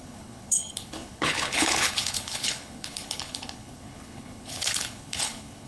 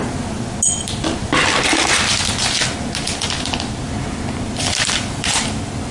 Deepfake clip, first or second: first